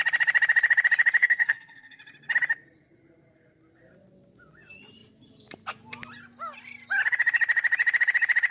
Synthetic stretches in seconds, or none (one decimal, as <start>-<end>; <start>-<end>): 1.2-2.0